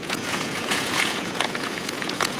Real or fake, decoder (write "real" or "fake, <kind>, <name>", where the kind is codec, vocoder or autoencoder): fake, vocoder, Vocos